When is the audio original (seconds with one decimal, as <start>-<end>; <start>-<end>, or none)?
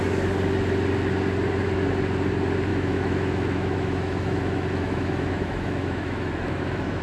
0.0-2.7